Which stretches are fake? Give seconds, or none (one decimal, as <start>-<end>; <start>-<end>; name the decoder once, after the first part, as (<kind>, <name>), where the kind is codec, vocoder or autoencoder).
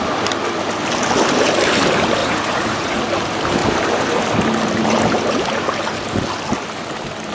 2.2-3.0 (vocoder, Vocos)